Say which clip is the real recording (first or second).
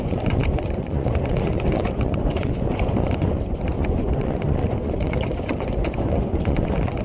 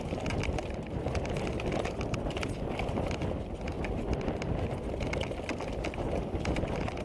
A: second